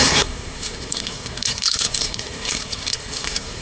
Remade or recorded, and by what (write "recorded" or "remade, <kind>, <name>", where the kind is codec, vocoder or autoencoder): remade, codec, SNAC